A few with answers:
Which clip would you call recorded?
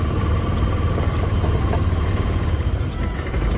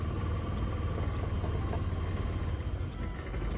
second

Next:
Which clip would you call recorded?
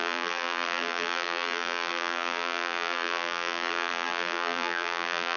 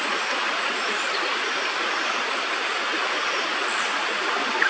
second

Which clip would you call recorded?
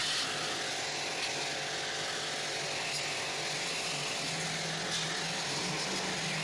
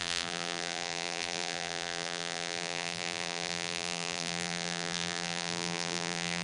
first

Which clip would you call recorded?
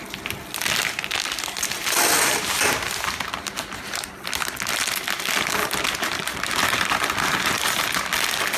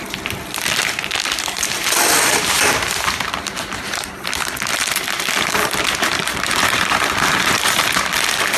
first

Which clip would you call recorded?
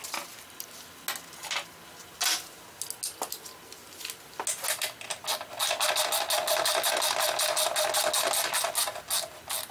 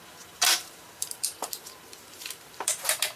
first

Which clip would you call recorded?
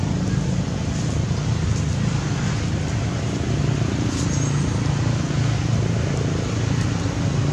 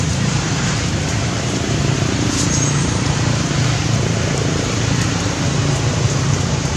first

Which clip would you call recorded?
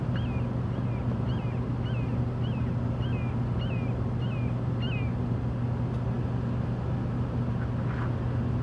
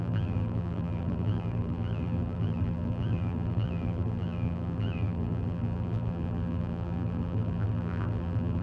first